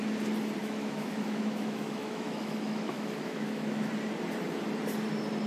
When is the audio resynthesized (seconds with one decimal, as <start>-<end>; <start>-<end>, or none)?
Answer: 0.6-3.9